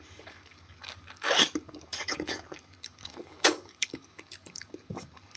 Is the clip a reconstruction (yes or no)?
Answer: yes